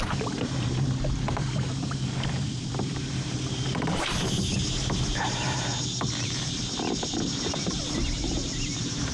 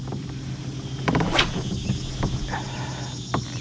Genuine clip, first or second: second